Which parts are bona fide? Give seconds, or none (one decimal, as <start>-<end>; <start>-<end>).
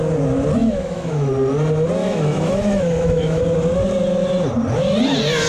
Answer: 0.0-0.6; 1.3-2.0; 3.4-5.5